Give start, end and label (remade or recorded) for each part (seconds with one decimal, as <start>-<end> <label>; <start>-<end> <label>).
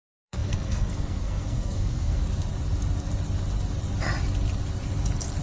0.0-2.2 remade; 2.2-5.4 recorded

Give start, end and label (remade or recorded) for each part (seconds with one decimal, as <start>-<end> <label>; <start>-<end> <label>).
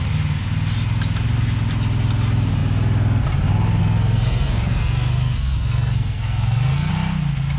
0.0-3.8 recorded; 3.8-6.9 remade; 6.9-7.6 recorded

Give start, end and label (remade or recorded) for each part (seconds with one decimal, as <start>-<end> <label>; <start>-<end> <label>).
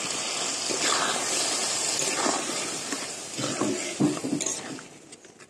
0.0-5.5 recorded